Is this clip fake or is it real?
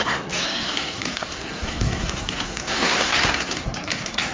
fake